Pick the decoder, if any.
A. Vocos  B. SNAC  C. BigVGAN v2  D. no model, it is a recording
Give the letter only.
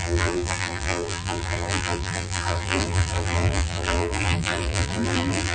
C